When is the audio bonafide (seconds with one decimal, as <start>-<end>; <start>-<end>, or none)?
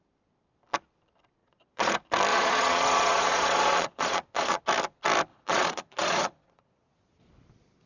0.0-1.4; 1.9-2.3; 4.6-5.3; 7.3-7.9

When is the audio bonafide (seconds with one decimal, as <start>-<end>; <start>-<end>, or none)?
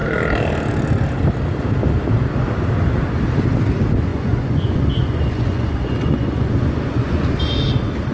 0.0-4.1; 7.3-8.1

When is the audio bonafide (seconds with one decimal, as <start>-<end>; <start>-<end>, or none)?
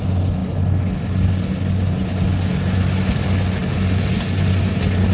0.0-5.1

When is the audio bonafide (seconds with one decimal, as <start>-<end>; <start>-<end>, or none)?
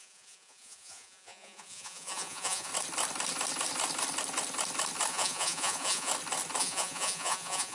2.7-5.1; 6.1-6.6